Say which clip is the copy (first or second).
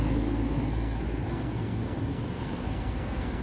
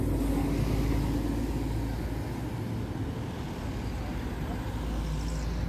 first